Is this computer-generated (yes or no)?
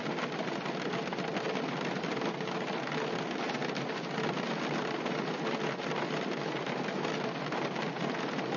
no